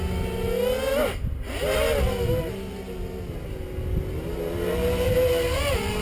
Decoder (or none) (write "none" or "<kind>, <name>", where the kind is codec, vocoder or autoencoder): none